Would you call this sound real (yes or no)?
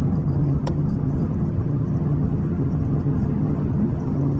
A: no